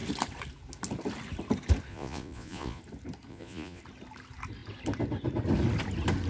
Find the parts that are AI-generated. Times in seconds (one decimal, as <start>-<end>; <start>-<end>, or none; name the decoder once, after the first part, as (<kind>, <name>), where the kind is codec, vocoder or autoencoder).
1.9-2.8 (vocoder, Vocos); 3.3-3.8